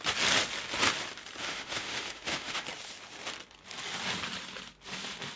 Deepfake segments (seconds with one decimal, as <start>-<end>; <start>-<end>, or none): 1.4-2.6